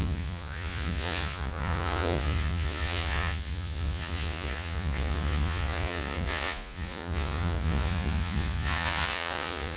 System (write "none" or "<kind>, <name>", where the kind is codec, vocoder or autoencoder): vocoder, Vocos